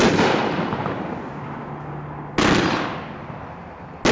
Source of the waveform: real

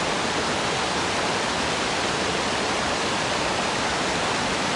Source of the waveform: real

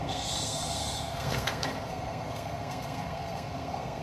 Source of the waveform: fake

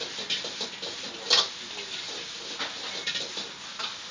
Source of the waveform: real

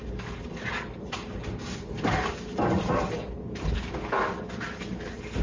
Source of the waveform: real